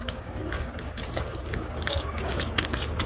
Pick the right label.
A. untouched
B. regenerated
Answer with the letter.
B